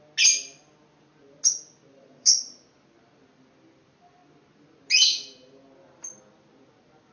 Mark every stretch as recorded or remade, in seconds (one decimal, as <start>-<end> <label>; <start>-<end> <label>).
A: 0.0-2.0 recorded; 2.0-2.6 remade; 2.6-7.1 recorded